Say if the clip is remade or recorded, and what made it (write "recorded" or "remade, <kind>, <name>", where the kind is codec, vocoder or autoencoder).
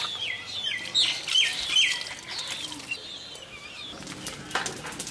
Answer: recorded